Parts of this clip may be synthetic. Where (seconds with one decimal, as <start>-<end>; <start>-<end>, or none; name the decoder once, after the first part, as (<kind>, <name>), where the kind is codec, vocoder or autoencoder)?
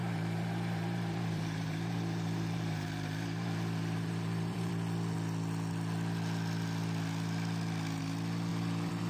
0.0-4.7 (vocoder, BigVGAN v2); 8.5-9.1